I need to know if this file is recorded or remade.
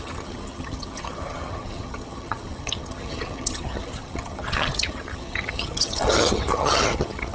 remade